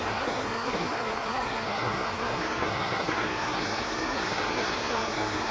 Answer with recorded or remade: remade